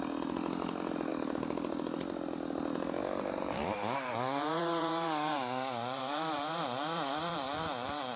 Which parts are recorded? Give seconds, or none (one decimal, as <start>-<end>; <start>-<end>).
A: 0.0-3.0